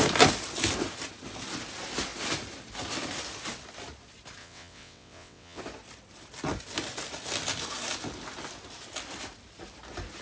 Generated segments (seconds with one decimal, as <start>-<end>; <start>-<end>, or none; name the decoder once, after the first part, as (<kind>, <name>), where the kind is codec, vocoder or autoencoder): 4.4-5.6 (vocoder, WaveNeXt)